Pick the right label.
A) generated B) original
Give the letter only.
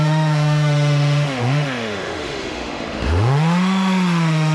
A